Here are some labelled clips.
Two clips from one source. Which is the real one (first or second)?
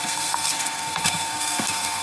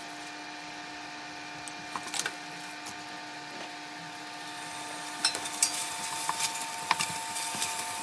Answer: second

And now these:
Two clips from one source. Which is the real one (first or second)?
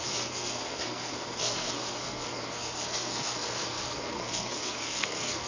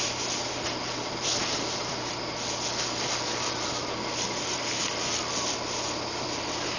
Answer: second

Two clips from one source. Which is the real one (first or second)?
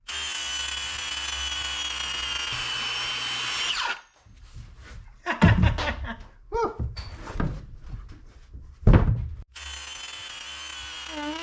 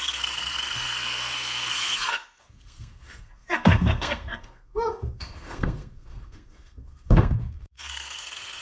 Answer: first